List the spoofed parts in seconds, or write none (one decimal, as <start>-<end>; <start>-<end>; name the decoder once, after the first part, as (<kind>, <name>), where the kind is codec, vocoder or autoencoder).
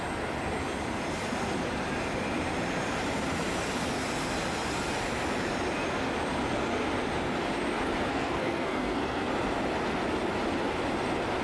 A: 8.1-9.3 (codec, SNAC)